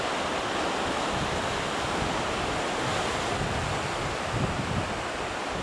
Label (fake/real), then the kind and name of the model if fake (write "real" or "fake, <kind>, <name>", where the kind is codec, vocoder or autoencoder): real